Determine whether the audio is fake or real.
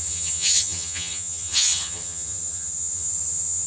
fake